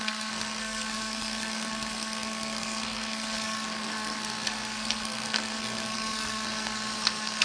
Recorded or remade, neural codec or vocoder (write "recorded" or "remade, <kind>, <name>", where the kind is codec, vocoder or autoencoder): remade, codec, SNAC